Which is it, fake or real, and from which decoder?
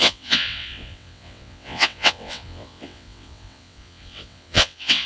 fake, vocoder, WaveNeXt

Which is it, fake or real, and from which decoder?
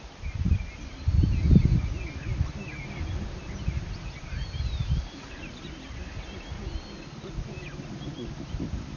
real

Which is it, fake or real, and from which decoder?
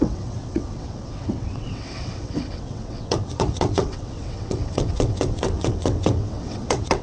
fake, vocoder, WaveNeXt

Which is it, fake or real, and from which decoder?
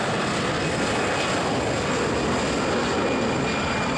real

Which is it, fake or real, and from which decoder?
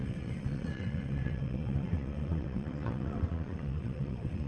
fake, vocoder, WaveNeXt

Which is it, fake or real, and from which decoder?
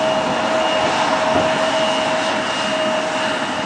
real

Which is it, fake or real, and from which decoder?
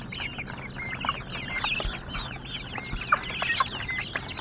real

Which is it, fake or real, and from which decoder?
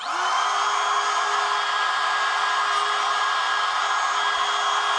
real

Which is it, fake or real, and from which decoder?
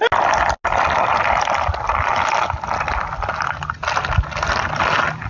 real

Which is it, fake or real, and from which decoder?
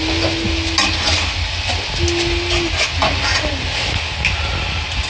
real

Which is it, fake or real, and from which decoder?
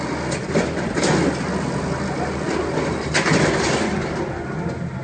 real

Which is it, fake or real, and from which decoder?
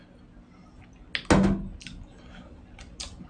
real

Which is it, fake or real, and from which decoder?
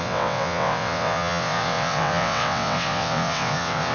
fake, vocoder, WaveNeXt